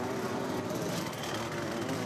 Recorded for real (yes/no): yes